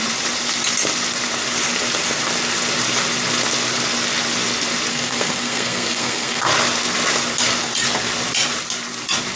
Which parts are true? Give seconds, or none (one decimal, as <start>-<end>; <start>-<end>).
0.0-4.9; 6.5-9.4